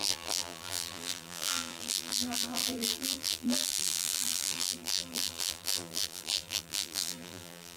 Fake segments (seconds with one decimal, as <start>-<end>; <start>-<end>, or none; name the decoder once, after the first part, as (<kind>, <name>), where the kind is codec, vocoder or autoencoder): 0.0-7.8 (vocoder, BigVGAN v2)